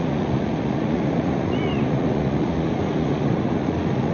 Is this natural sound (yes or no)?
no